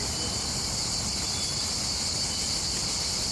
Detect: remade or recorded recorded